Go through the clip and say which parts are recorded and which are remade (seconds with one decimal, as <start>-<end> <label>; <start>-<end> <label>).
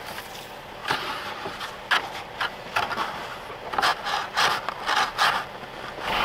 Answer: 0.0-0.8 recorded; 0.8-1.7 remade; 1.7-3.9 recorded; 3.9-4.5 remade; 4.5-6.2 recorded